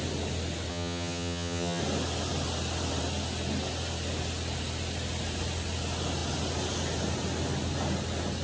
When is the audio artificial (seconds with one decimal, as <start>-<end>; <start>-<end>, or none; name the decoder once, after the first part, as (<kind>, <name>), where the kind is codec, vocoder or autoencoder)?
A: 0.7-1.8 (vocoder, HiFi-GAN)